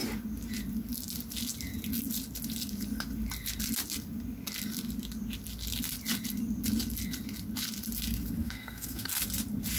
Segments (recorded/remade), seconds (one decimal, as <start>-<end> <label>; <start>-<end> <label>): 0.0-8.4 recorded; 8.4-9.1 remade; 9.1-9.8 recorded